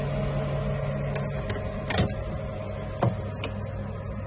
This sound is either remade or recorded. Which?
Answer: recorded